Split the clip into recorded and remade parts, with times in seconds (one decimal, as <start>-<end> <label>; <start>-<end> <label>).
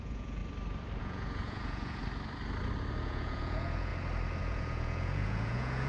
0.0-0.4 remade; 0.4-1.0 recorded; 1.0-2.0 remade; 2.0-3.0 recorded; 3.0-3.9 remade; 3.9-4.4 recorded; 4.4-5.9 remade